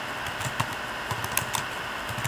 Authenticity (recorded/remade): recorded